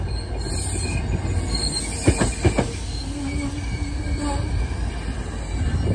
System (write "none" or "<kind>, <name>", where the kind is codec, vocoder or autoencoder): none